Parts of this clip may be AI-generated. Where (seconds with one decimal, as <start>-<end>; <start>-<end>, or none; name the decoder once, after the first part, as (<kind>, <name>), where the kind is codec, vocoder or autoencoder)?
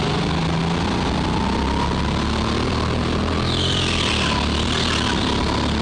none